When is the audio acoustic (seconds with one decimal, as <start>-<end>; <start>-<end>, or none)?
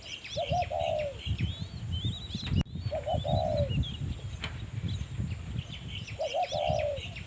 0.0-7.3